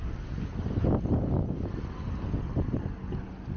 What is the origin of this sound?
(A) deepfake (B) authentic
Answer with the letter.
B